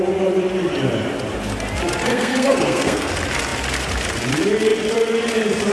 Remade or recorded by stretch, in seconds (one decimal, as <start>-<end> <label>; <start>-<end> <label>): 0.0-2.1 recorded; 2.1-3.1 remade; 3.1-5.7 recorded